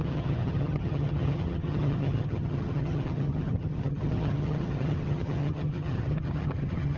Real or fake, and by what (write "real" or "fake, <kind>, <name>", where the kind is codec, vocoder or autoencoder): fake, vocoder, HiFi-GAN